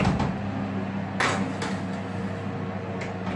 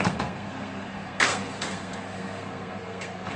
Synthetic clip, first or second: second